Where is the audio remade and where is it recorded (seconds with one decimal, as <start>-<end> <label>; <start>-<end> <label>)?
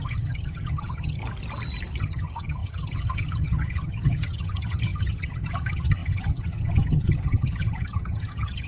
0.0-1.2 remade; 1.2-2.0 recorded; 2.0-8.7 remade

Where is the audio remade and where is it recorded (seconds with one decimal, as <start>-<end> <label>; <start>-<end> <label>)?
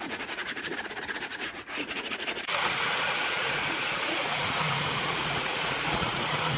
0.0-6.6 remade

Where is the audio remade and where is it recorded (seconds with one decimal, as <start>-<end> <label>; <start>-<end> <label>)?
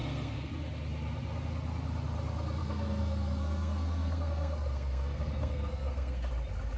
0.0-0.5 remade; 0.5-2.6 recorded; 2.6-6.3 remade; 6.3-6.8 recorded